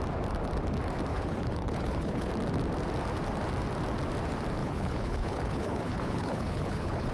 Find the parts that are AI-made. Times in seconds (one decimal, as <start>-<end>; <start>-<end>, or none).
1.1-2.3; 4.6-7.1

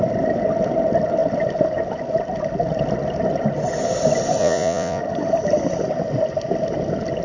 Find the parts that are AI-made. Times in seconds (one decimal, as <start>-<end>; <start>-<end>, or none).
4.4-5.0

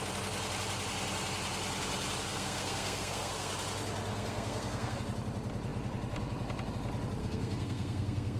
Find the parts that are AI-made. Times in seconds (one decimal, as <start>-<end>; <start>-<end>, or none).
2.3-3.5; 4.1-5.0; 7.2-8.4

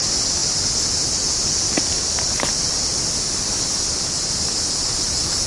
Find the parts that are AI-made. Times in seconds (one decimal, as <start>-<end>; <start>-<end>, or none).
3.9-5.5

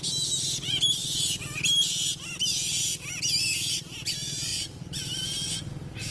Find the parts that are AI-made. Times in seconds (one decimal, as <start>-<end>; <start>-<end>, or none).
none

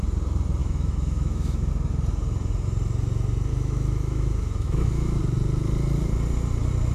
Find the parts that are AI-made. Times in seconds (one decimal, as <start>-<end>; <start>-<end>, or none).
0.6-1.7; 3.5-5.2

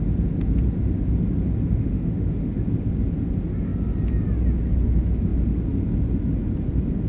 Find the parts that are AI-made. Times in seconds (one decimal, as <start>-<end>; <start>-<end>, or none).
1.6-2.5